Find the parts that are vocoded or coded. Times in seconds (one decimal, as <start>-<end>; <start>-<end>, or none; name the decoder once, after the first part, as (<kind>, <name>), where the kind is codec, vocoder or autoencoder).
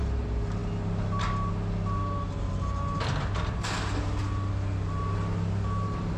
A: none